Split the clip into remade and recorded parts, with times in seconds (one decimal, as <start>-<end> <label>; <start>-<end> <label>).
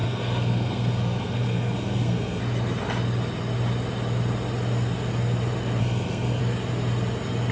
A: 0.0-2.4 remade; 2.4-5.8 recorded; 5.8-6.4 remade; 6.4-7.5 recorded